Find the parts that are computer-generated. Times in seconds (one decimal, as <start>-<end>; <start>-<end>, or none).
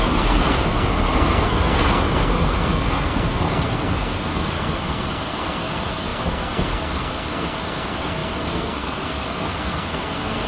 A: 0.0-10.5